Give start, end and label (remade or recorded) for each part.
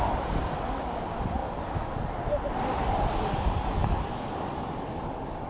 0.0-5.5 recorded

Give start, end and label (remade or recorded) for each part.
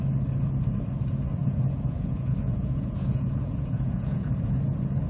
0.0-1.4 recorded; 1.4-4.3 remade; 4.3-5.1 recorded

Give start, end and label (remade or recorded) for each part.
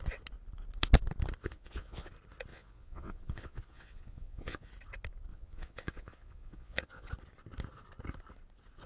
0.0-1.4 recorded; 1.4-2.1 remade; 2.1-2.5 recorded; 2.5-4.7 remade; 4.7-5.3 recorded; 5.3-7.1 remade; 7.1-8.9 recorded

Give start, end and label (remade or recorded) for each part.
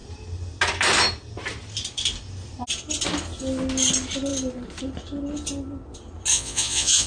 0.0-6.3 recorded; 6.3-7.1 remade